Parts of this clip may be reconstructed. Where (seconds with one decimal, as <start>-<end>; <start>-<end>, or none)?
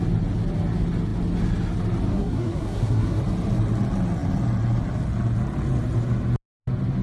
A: 2.1-3.2